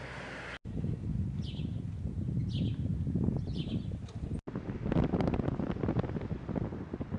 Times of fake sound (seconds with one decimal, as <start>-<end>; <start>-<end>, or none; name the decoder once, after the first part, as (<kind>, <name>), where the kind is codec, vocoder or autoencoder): none